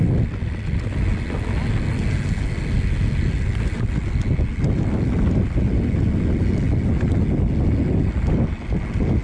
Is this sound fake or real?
real